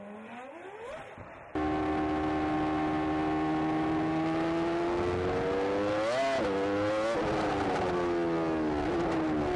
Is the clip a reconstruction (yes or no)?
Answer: no